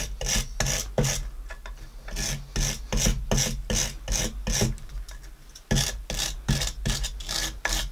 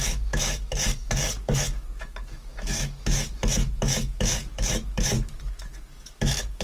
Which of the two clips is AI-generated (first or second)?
second